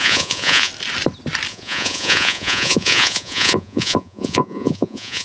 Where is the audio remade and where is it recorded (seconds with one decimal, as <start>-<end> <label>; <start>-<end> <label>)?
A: 0.0-0.7 remade; 0.7-1.5 recorded; 1.5-5.2 remade